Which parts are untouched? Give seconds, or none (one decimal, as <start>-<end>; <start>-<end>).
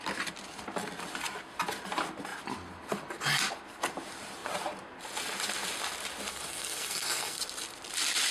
0.0-6.3; 7.4-8.3